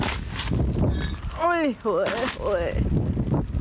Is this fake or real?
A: real